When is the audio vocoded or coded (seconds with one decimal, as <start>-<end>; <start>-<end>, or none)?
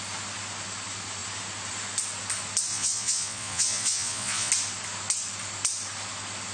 2.7-4.5